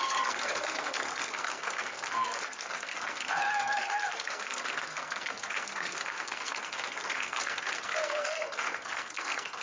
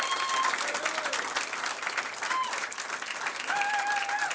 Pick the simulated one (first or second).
first